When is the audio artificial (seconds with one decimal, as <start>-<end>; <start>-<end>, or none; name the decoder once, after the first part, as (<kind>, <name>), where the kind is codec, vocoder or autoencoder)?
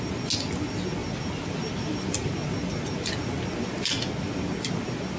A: 1.0-4.1 (vocoder, BigVGAN v2)